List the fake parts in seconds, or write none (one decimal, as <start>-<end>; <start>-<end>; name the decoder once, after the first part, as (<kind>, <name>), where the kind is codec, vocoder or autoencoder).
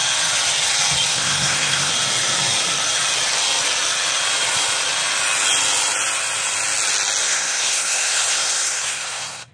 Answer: 1.1-1.9 (codec, SNAC); 7.2-9.5